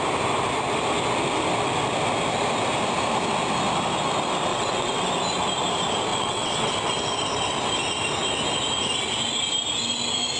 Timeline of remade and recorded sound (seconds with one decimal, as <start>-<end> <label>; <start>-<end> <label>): 0.0-4.5 recorded; 4.5-5.1 remade; 5.1-6.1 recorded; 6.1-6.7 remade; 6.7-10.4 recorded